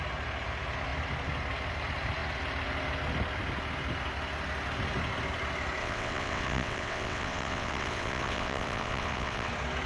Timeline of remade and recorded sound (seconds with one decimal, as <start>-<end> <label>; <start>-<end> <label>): 0.0-5.8 recorded; 5.8-9.5 remade; 9.5-9.9 recorded